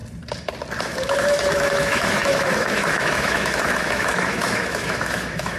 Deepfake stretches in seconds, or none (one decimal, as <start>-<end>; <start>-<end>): 0.8-5.6

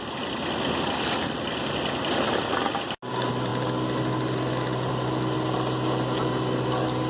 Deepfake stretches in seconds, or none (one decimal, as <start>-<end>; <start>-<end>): none

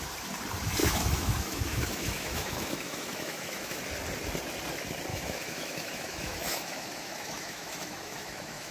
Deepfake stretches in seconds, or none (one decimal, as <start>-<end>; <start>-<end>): 0.8-3.8; 5.1-8.7

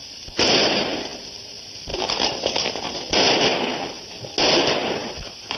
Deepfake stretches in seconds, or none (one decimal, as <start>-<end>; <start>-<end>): none